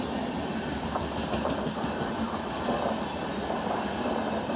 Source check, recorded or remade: recorded